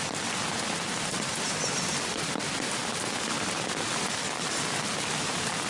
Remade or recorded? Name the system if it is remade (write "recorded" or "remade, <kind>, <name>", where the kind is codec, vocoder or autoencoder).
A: recorded